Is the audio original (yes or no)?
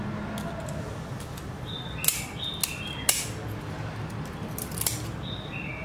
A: yes